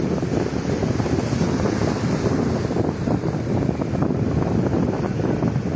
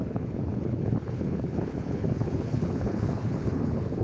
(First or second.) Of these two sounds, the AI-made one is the second